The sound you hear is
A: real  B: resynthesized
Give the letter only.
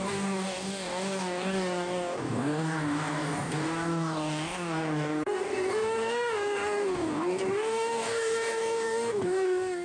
B